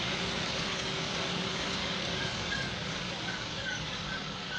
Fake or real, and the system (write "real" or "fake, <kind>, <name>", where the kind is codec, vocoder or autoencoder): fake, codec, DAC